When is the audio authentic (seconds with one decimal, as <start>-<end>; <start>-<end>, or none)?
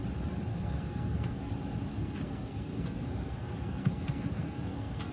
0.0-0.5; 1.5-1.9